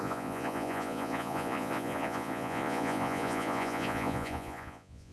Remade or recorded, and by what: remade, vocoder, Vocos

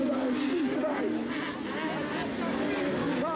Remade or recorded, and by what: recorded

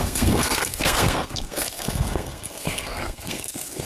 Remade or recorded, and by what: remade, codec, SNAC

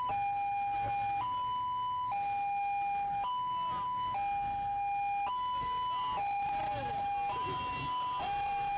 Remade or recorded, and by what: recorded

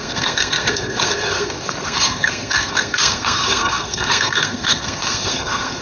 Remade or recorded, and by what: remade, codec, SNAC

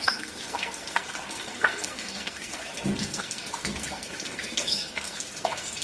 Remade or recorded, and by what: remade, codec, SNAC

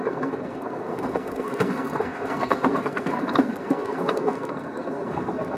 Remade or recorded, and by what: remade, codec, SNAC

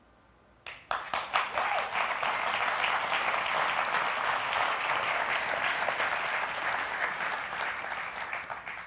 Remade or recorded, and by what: recorded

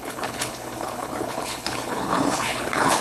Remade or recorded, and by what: remade, codec, HILCodec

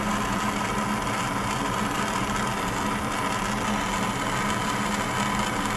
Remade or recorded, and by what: recorded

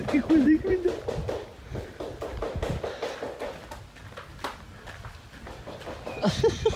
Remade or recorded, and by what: recorded